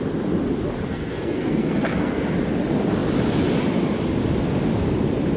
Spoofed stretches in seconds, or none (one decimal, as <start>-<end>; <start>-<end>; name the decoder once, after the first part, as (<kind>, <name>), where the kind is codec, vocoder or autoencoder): 0.9-2.3 (codec, SNAC)